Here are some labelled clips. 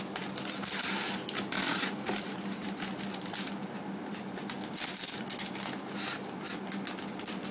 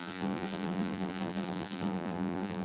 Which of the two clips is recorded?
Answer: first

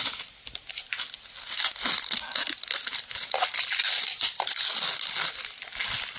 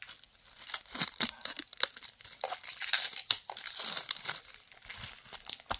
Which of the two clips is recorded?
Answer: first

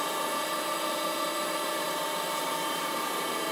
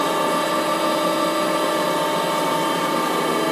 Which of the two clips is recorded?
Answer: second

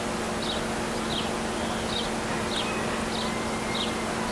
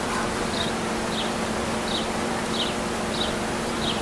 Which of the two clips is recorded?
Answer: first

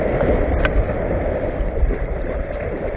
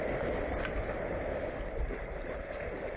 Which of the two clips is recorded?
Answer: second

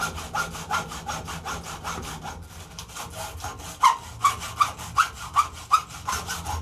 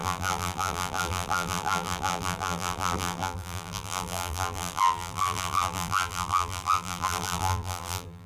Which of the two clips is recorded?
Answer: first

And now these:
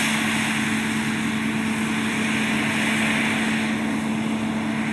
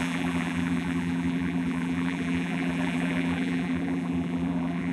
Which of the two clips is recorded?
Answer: first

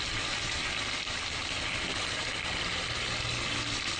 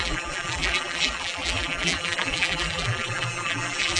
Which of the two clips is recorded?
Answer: first